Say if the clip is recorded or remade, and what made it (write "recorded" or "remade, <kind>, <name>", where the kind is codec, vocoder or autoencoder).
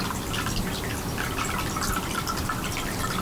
recorded